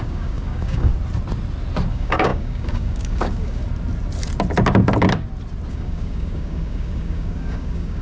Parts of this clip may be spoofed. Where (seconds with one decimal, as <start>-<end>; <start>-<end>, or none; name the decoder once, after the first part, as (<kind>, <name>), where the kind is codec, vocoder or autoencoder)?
0.0-0.9 (codec, DAC); 1.9-3.6; 5.7-8.0